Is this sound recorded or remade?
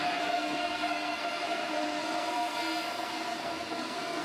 remade